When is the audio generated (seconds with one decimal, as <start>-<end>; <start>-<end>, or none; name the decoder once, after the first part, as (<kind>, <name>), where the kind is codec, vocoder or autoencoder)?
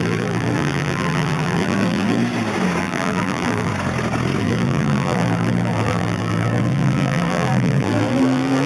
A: 0.0-2.2 (vocoder, BigVGAN v2); 2.8-3.7; 4.4-8.7